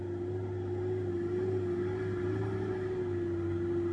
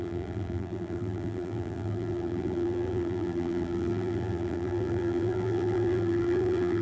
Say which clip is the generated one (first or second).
second